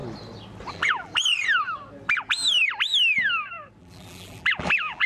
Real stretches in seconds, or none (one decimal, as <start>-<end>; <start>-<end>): 0.0-0.7; 1.1-3.8